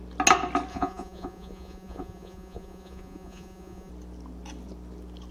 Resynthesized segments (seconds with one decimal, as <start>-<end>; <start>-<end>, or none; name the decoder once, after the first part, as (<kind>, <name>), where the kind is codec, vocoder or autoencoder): 0.7-3.9 (vocoder, Vocos)